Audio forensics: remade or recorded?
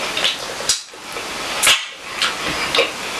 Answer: recorded